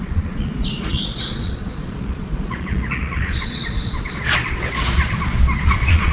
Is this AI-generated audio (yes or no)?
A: yes